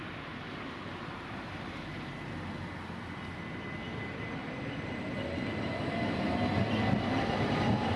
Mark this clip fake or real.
real